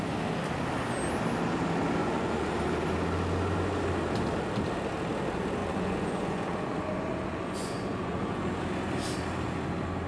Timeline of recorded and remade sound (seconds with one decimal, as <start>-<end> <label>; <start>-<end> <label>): 0.0-2.0 recorded; 2.0-2.5 remade; 2.5-5.6 recorded; 5.6-8.6 remade; 8.6-10.1 recorded